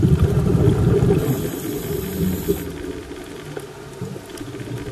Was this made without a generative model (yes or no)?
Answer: yes